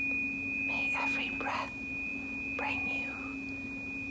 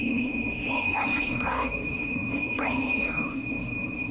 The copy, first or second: second